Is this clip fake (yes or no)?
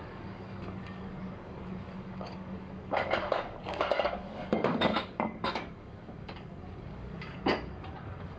yes